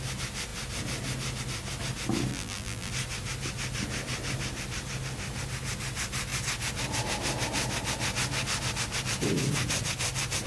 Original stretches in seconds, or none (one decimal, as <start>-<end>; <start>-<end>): 0.0-2.3; 2.9-10.5